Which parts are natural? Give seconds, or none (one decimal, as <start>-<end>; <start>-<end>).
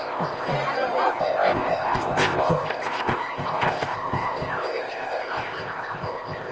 0.5-1.1